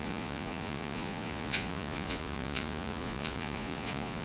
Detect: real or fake fake